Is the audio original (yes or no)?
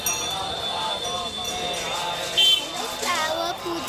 yes